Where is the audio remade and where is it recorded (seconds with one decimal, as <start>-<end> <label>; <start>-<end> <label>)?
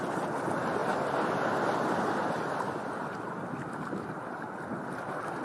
0.0-0.8 recorded; 0.8-2.3 remade; 2.3-5.4 recorded